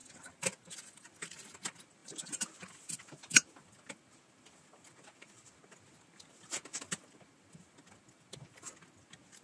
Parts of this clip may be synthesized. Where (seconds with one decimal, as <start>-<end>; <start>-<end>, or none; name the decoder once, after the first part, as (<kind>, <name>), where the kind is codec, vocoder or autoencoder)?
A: none

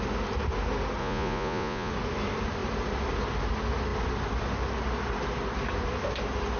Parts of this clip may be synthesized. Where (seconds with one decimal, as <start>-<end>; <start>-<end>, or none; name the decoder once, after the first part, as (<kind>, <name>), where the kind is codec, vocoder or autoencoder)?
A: 1.0-1.9 (vocoder, Vocos)

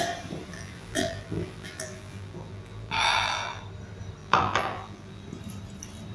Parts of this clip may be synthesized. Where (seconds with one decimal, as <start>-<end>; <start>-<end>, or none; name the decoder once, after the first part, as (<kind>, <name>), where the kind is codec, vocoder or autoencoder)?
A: 0.5-3.6 (vocoder, BigVGAN v2); 4.2-5.2

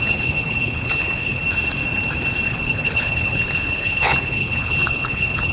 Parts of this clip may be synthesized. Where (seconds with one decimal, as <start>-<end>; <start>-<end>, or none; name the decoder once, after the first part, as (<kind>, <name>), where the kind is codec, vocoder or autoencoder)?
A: 0.0-1.4 (codec, HILCodec); 2.5-5.5

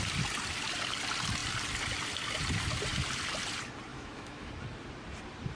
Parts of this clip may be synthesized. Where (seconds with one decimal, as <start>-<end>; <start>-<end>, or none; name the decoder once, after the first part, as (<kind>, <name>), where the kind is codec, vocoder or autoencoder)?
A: 3.9-4.5 (autoencoder, DAC-VAE)

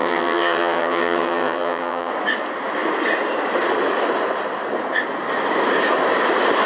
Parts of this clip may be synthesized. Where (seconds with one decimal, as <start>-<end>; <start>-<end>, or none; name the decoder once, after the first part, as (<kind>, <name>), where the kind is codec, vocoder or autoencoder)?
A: 0.0-2.1 (vocoder, HiFi-GAN)